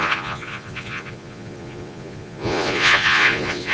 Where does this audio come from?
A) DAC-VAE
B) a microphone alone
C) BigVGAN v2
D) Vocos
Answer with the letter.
D